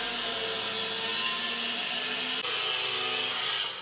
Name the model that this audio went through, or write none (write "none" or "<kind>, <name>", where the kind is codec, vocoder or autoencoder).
none